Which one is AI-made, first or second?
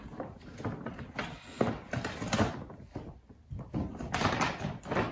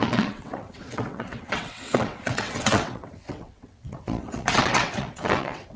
second